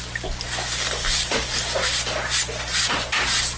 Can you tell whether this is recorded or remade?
recorded